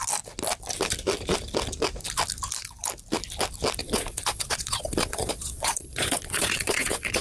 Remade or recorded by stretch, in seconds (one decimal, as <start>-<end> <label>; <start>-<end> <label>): 0.0-3.8 recorded; 3.8-7.2 remade